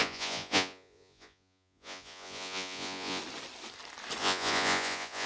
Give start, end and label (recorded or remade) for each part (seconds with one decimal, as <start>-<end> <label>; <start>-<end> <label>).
0.0-3.2 remade; 3.2-4.2 recorded; 4.2-5.3 remade